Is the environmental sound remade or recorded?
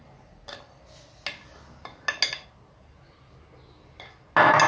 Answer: recorded